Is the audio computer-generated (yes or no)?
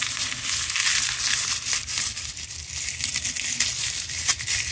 no